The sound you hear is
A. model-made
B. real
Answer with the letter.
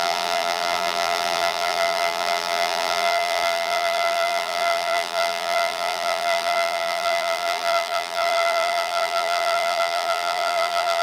A